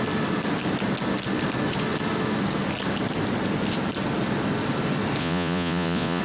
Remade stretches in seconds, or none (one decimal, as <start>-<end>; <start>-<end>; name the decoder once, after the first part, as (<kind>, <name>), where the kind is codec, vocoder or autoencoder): 5.2-6.2 (vocoder, Vocos)